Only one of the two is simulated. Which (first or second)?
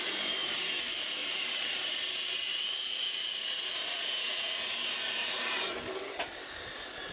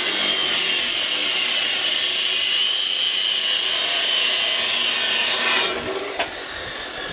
first